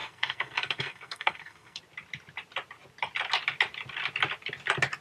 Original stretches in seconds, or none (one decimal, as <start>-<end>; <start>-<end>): 1.8-5.0